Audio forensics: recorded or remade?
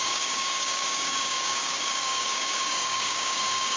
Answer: remade